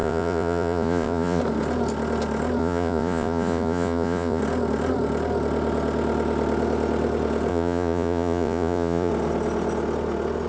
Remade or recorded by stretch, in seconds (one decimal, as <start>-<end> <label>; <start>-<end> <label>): 0.0-1.4 remade; 1.4-2.6 recorded; 2.6-4.4 remade; 4.4-7.5 recorded; 7.5-9.1 remade; 9.1-10.5 recorded